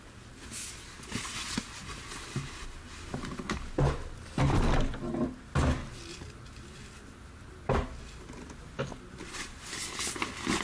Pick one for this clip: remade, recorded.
recorded